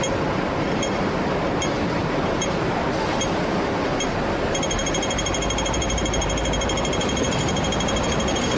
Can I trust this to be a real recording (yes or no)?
no